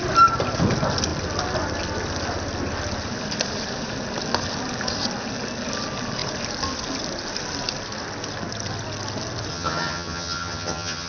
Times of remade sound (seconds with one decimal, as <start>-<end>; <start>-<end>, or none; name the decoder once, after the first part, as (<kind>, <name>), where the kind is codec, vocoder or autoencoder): 9.5-11.1 (vocoder, HiFi-GAN)